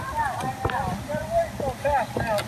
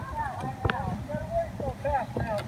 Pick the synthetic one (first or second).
second